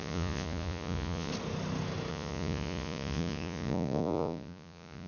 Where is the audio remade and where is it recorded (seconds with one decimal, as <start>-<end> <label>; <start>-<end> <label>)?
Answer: 0.0-1.3 remade; 1.3-2.1 recorded; 2.1-5.1 remade